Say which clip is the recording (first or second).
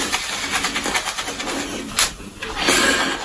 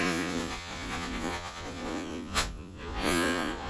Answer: first